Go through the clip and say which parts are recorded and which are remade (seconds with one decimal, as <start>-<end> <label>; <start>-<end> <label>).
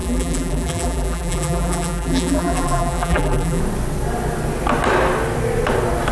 0.0-3.6 remade; 3.6-6.1 recorded